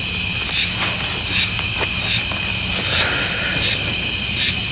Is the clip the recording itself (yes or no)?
yes